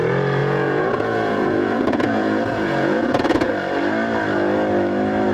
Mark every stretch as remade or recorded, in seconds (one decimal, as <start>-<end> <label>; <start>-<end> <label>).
0.0-0.4 recorded; 0.4-3.5 remade; 3.5-5.3 recorded